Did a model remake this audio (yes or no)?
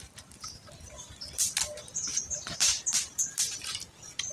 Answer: no